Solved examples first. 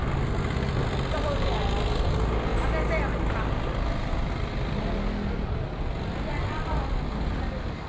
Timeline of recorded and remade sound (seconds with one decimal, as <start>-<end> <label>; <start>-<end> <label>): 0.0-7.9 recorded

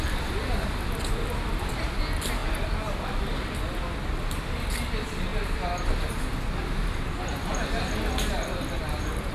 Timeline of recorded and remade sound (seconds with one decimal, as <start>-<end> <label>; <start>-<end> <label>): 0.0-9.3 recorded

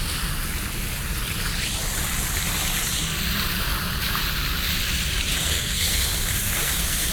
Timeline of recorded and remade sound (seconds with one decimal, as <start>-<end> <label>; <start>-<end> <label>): 0.0-5.3 recorded; 5.3-7.1 remade

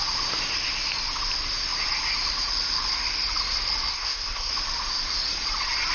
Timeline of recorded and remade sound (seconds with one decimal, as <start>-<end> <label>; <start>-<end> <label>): 0.0-3.9 recorded; 3.9-4.5 remade; 4.5-5.9 recorded

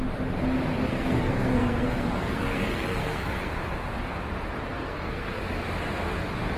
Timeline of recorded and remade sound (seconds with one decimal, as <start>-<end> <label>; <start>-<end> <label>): 0.0-0.9 recorded; 0.9-3.5 remade; 3.5-4.7 recorded; 4.7-5.4 remade; 5.4-6.6 recorded